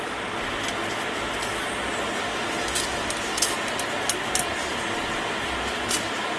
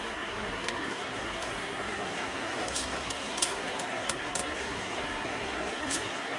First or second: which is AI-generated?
second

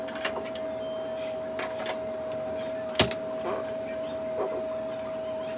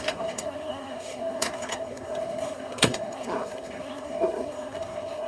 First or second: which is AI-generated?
second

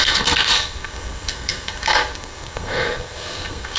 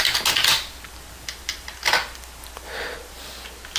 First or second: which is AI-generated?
first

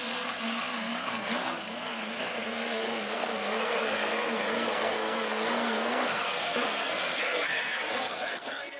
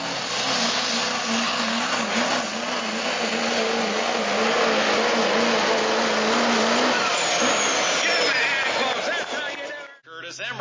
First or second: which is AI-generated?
first